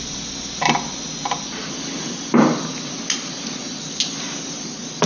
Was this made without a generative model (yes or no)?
yes